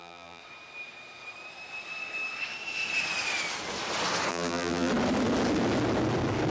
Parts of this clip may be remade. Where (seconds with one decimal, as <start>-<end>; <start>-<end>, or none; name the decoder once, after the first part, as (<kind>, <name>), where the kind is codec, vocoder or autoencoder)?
0.0-0.4 (vocoder, BigVGAN v2); 4.3-4.9